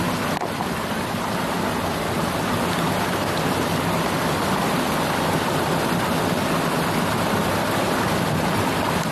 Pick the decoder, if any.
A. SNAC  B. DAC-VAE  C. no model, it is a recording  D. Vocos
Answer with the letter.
C